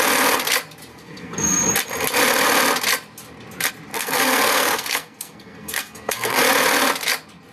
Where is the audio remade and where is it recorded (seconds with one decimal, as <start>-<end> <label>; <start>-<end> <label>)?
0.0-0.9 recorded; 0.9-1.7 remade; 1.7-3.9 recorded; 3.9-6.4 remade; 6.4-7.5 recorded